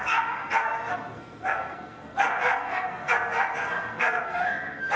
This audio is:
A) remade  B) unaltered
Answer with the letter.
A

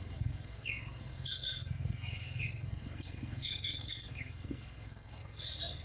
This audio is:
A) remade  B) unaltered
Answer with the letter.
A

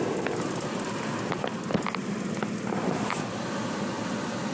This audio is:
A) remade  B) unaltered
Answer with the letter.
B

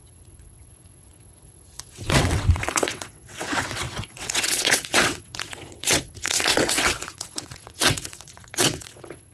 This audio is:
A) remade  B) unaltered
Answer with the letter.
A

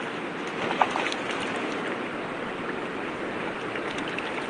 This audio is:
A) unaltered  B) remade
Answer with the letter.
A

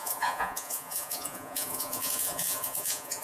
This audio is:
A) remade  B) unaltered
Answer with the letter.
A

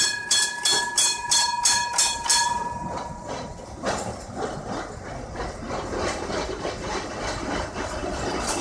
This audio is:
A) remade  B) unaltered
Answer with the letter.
A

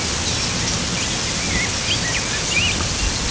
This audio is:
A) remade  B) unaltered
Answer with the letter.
B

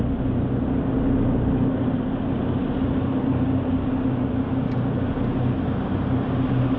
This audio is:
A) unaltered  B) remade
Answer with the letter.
A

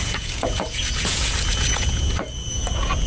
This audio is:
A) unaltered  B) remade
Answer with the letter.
B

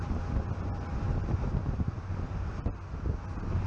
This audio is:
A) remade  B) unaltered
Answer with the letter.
B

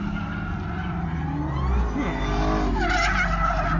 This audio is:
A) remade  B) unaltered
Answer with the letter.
B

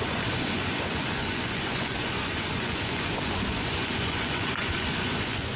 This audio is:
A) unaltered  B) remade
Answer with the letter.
B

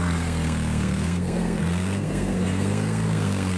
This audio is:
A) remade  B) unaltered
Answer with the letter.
A